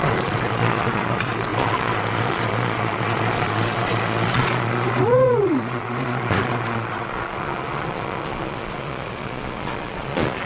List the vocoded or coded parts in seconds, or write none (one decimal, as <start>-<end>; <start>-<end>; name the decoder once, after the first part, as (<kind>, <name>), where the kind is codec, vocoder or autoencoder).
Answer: 0.0-10.5 (vocoder, Vocos)